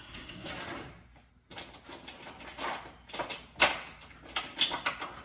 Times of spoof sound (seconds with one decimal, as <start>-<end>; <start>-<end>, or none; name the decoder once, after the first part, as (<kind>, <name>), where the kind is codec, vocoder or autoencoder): 0.0-0.5 (codec, SNAC)